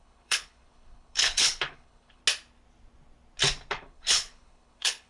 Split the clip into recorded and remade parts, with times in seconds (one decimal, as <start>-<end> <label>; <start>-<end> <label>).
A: 0.0-2.2 remade; 2.2-3.7 recorded; 3.7-5.1 remade